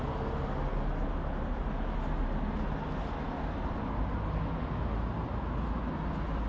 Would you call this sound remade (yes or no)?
no